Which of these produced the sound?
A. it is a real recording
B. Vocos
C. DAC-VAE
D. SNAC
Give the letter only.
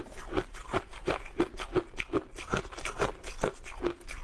A